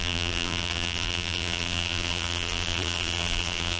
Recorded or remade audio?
remade